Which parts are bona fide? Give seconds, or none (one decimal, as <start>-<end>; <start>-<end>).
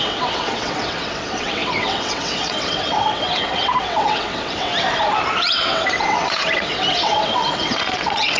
4.7-5.4